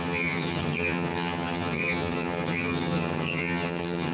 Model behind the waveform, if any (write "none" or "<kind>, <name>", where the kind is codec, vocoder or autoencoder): vocoder, HiFi-GAN